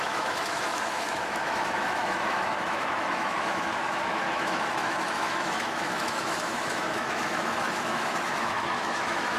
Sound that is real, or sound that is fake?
fake